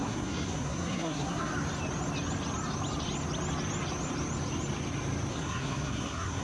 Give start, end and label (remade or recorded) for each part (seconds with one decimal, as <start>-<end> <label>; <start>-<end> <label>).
0.0-1.5 remade; 1.5-5.3 recorded; 5.3-6.4 remade